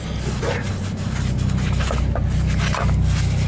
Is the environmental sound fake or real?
real